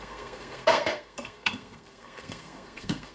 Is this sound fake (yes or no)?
yes